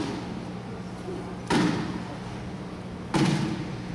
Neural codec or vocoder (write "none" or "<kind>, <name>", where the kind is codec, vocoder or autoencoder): none